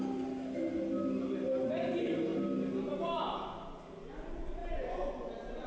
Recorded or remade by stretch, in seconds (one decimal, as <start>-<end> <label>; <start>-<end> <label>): 0.0-5.7 recorded